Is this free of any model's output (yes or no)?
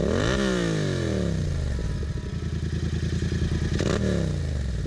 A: yes